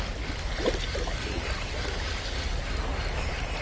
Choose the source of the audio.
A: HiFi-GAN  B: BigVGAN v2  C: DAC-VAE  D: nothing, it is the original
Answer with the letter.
D